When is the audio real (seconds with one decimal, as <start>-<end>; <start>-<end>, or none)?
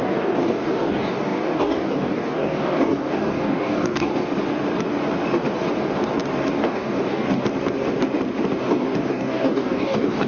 4.1-6.5; 7.4-8.6